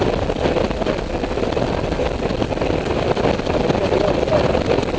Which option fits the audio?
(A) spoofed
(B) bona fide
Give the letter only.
B